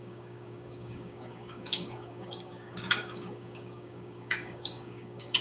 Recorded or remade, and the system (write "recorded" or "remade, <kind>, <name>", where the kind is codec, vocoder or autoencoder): remade, codec, DAC